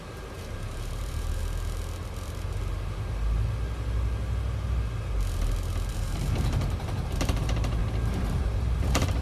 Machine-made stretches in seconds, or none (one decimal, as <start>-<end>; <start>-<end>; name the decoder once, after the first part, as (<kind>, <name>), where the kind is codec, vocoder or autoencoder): 0.0-1.4 (vocoder, BigVGAN v2); 5.9-7.8; 8.4-9.2